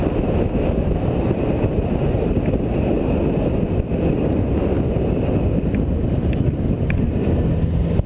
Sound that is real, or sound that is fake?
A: real